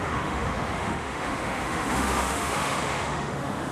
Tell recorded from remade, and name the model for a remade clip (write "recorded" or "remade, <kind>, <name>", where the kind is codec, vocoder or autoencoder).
remade, autoencoder, DAC-VAE